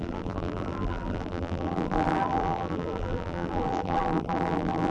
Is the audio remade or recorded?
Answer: remade